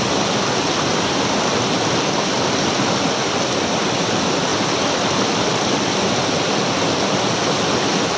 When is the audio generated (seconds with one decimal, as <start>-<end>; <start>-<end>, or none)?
4.5-5.1